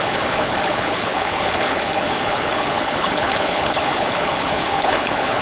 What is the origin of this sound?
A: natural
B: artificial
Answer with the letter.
B